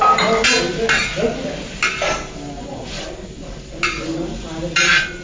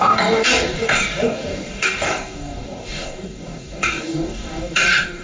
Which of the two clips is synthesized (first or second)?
second